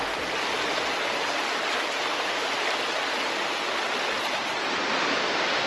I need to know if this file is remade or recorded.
recorded